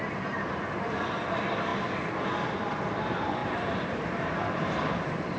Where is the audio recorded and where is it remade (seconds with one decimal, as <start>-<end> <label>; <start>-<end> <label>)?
0.0-0.6 remade; 0.6-3.4 recorded; 3.4-4.3 remade; 4.3-5.4 recorded

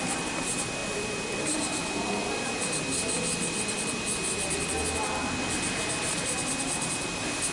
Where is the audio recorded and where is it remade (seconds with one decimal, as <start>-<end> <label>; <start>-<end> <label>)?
0.0-0.8 remade; 0.8-1.4 recorded; 1.4-1.8 remade; 1.8-6.1 recorded; 6.1-7.5 remade

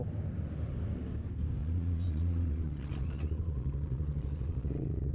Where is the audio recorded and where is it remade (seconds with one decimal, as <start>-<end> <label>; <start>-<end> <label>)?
0.0-1.6 recorded; 1.6-5.1 remade

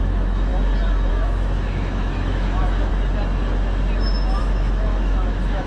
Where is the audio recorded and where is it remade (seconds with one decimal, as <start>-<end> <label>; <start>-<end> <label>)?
0.0-0.5 remade; 0.5-1.1 recorded; 1.1-2.9 remade; 2.9-4.4 recorded; 4.4-5.7 remade

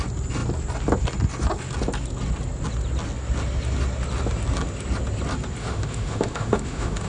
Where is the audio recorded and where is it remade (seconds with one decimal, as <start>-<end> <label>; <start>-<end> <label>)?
0.0-5.6 recorded; 5.6-7.1 remade